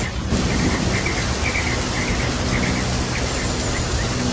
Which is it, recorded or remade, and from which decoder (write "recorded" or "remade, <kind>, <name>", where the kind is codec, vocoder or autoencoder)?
recorded